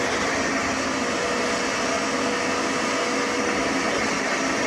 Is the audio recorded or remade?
recorded